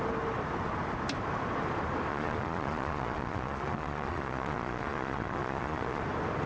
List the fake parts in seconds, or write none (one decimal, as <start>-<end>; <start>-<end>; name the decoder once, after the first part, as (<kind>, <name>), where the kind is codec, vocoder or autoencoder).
2.1-6.0 (vocoder, Vocos)